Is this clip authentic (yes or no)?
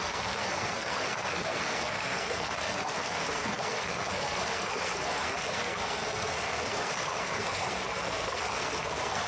no